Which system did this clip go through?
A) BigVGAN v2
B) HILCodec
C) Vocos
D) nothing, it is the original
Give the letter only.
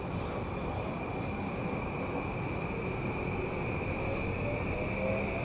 D